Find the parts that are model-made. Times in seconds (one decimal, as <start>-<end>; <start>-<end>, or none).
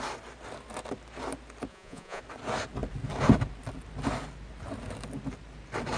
1.7-2.2